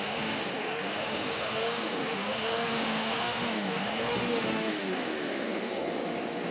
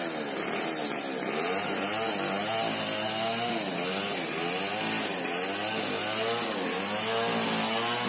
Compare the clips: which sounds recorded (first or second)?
second